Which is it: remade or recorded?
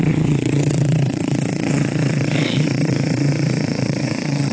remade